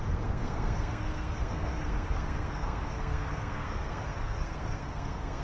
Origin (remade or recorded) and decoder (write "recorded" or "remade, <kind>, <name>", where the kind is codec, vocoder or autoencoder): remade, codec, SNAC